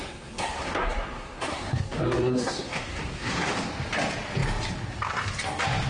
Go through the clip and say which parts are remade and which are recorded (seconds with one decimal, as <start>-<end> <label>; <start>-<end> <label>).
0.0-3.5 remade; 3.5-5.9 recorded